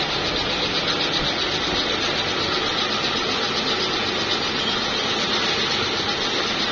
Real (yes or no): yes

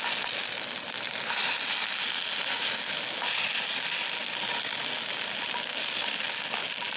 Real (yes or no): yes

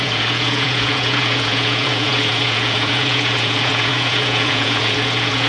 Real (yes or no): no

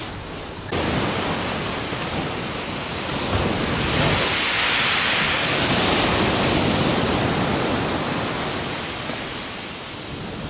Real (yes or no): yes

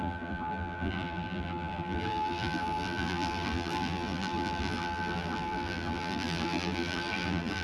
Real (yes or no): no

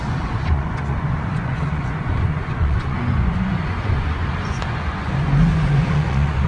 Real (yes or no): no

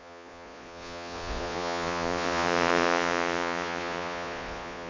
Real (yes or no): no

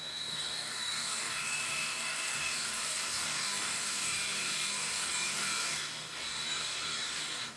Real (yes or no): no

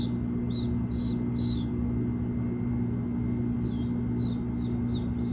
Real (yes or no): yes